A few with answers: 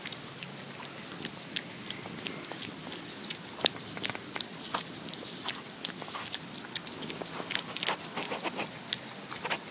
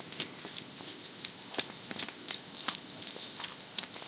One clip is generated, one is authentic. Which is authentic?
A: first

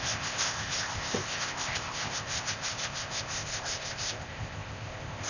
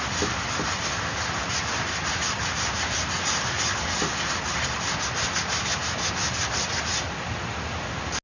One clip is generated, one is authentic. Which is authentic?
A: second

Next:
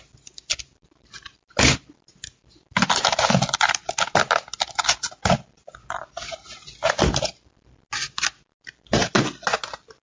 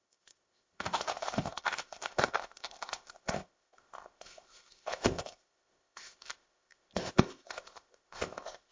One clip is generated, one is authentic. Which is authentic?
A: first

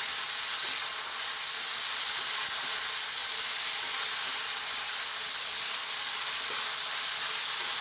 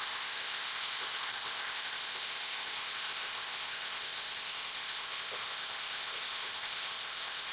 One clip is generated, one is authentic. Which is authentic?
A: first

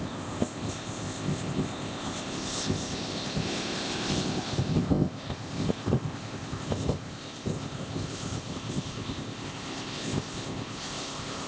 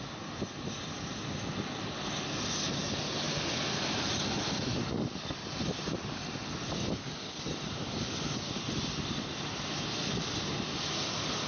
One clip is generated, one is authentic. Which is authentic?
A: second